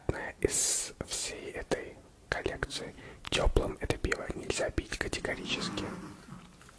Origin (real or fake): real